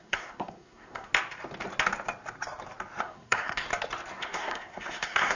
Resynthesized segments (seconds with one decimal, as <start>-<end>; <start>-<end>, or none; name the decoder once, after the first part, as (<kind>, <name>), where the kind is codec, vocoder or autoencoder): 0.0-1.1 (codec, SNAC); 3.0-3.7; 4.2-5.4